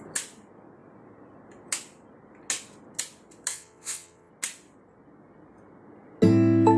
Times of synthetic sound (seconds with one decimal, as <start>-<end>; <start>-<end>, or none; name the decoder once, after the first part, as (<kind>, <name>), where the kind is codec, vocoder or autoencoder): 3.5-4.3 (vocoder, WaveNeXt)